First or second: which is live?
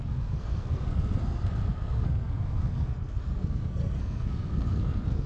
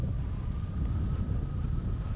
second